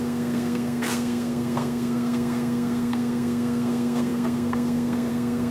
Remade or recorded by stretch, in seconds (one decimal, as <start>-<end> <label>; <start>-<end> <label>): 0.0-5.5 remade